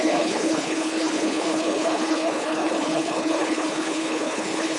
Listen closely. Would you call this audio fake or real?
fake